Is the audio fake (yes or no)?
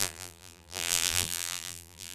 yes